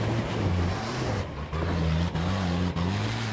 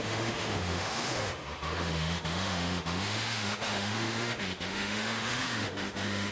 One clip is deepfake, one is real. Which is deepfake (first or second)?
second